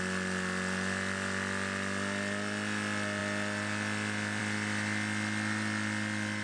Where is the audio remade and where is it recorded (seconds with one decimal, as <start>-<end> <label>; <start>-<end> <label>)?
0.0-6.4 recorded